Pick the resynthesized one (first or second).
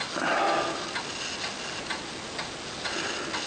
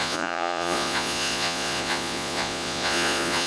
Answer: second